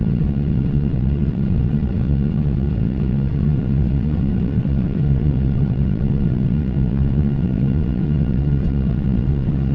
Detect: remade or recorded remade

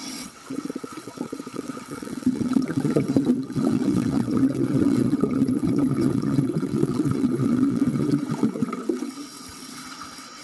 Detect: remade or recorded remade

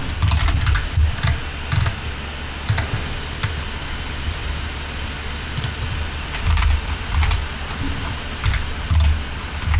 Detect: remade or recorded recorded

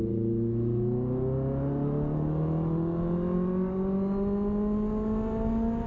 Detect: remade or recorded recorded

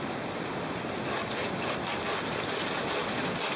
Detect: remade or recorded recorded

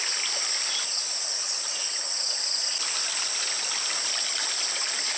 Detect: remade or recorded recorded